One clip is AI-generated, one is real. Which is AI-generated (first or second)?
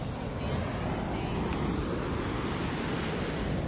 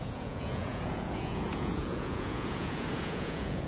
second